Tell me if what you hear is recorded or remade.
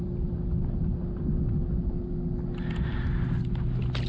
recorded